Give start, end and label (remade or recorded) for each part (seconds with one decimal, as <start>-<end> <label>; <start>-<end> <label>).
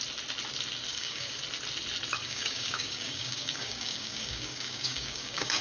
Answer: 0.0-0.9 recorded; 0.9-1.4 remade; 1.4-2.2 recorded; 2.2-5.6 remade